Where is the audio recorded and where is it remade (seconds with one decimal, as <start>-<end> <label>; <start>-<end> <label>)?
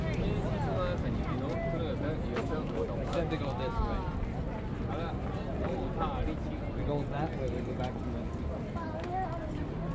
0.0-2.4 recorded; 2.4-3.4 remade; 3.4-9.9 recorded